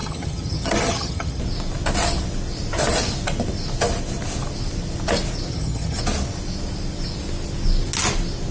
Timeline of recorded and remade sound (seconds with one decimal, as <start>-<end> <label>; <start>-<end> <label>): 0.0-1.4 remade; 1.4-5.5 recorded; 5.5-6.0 remade; 6.0-8.5 recorded